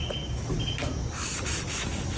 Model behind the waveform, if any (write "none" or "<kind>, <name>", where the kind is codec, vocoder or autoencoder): none